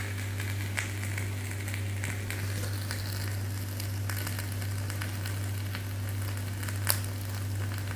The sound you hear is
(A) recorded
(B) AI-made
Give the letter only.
A